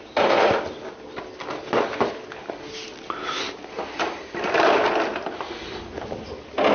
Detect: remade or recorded recorded